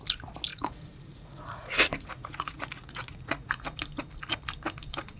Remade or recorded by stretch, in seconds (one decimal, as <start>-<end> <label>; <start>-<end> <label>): 0.0-0.5 recorded; 0.5-3.6 remade; 3.6-5.2 recorded